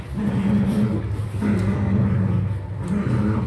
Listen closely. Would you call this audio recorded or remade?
recorded